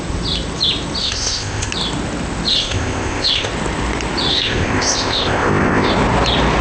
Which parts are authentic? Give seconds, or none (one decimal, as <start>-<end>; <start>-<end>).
0.0-1.0; 1.7-2.5; 3.5-4.3; 5.9-6.6